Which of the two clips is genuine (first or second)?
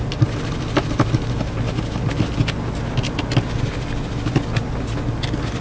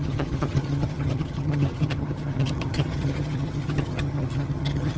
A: first